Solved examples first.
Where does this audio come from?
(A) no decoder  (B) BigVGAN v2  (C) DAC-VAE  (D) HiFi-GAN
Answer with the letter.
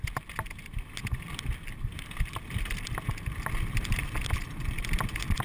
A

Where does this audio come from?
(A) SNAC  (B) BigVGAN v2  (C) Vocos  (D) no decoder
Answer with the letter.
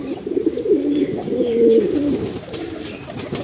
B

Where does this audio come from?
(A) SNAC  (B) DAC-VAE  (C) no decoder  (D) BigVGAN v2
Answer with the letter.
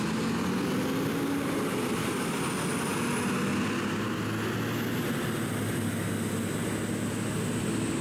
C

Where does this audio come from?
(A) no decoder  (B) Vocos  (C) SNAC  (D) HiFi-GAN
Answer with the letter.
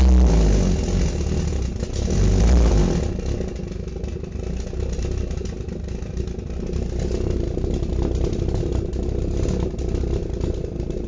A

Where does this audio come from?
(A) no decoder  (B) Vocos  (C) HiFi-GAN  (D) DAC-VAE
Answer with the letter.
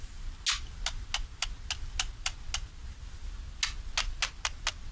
A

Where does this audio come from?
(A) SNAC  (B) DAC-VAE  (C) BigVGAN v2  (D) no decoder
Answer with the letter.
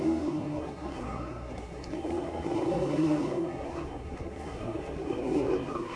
A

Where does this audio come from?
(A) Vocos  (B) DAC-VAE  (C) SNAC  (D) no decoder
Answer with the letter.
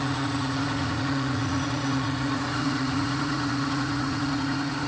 A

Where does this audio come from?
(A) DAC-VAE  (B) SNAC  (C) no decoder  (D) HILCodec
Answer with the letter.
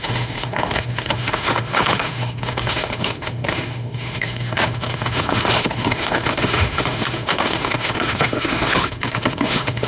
A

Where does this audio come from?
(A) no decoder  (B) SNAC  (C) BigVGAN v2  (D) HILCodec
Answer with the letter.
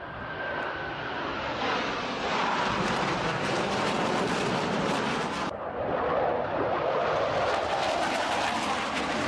A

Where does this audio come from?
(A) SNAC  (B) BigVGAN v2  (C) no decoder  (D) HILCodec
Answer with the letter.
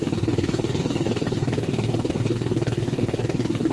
A